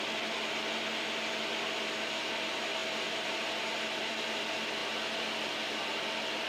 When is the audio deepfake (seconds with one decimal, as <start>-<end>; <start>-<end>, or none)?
none